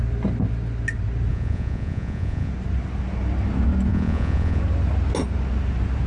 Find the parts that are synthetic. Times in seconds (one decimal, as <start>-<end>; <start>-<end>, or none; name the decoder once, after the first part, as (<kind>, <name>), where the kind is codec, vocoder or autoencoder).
1.3-2.5 (vocoder, Vocos); 3.9-4.6